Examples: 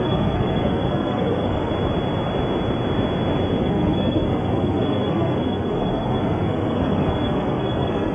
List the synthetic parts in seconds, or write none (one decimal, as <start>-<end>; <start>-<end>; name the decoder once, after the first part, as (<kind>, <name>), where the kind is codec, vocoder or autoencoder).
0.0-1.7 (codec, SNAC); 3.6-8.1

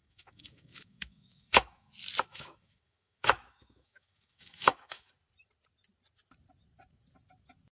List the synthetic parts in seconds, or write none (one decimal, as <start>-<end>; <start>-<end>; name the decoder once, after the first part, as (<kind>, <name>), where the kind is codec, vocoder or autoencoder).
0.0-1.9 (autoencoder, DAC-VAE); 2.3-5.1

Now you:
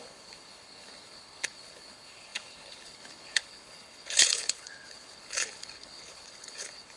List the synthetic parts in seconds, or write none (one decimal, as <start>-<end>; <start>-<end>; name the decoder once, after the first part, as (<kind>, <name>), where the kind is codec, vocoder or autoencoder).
0.0-7.0 (codec, HILCodec)